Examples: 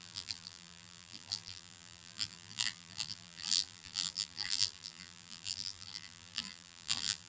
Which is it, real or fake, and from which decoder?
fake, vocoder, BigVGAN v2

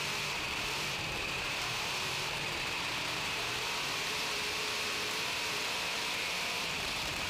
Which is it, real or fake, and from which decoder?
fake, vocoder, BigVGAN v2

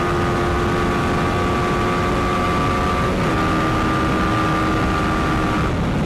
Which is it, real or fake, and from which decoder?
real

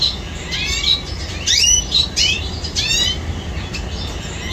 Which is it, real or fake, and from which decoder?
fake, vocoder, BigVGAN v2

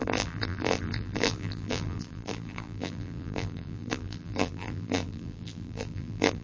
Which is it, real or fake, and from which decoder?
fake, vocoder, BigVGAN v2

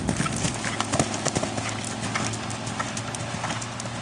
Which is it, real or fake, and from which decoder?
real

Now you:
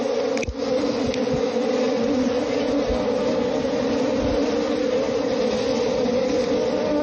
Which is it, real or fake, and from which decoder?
real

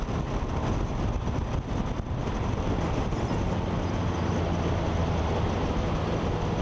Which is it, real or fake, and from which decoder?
real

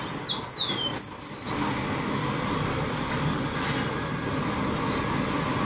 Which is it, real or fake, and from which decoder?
real